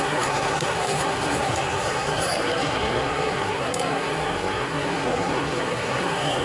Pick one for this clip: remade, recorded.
remade